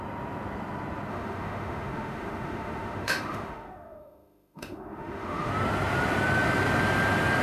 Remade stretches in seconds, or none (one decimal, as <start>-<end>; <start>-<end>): 1.1-5.5